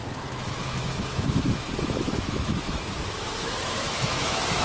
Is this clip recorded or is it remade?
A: remade